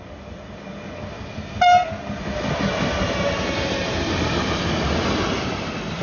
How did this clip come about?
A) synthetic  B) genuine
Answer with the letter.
B